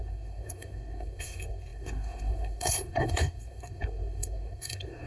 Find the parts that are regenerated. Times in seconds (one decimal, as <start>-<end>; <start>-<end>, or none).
0.0-5.1